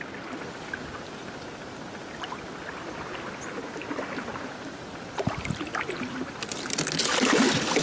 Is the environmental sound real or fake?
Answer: fake